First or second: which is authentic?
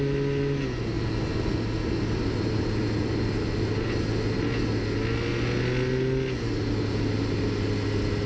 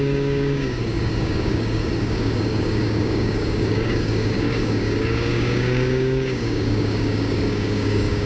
first